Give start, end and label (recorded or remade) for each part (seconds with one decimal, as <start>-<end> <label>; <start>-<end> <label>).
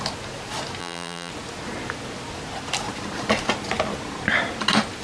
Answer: 0.0-0.8 recorded; 0.8-1.3 remade; 1.3-5.0 recorded